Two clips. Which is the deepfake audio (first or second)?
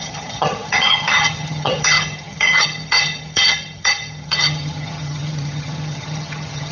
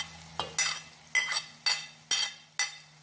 first